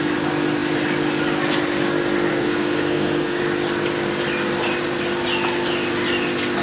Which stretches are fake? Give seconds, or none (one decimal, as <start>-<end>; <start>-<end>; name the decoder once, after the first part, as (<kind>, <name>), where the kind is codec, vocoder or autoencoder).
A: 2.3-3.4 (codec, SNAC)